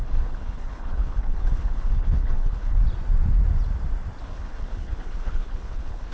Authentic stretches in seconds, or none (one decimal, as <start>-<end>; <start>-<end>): 2.8-4.2